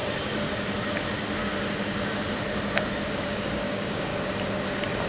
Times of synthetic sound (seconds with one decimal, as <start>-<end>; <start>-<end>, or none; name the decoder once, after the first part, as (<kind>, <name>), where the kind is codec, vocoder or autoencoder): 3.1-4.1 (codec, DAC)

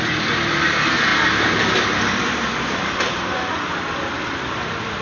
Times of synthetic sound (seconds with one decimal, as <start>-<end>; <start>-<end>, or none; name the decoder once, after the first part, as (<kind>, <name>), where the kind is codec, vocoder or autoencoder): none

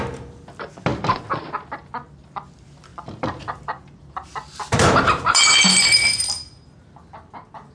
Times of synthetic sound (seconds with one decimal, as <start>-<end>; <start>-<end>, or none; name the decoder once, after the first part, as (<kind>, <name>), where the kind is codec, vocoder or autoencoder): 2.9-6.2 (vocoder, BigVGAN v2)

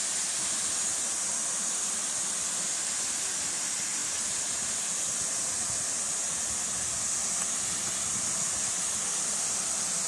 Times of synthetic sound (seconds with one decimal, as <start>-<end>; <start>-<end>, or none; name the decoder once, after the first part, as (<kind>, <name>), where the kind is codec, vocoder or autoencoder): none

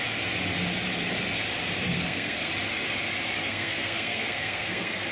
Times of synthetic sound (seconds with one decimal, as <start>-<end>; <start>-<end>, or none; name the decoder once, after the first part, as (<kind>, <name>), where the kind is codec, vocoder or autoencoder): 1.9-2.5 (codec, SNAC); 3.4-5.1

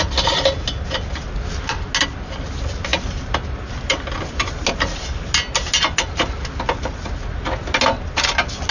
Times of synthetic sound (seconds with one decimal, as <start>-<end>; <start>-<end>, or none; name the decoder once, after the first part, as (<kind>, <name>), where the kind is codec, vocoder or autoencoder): none

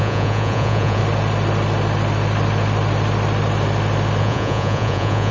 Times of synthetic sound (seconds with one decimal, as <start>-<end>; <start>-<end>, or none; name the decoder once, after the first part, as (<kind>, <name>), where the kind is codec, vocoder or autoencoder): 0.0-1.0 (vocoder, Vocos); 4.2-5.3